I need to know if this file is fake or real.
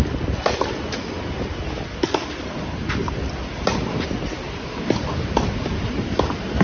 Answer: real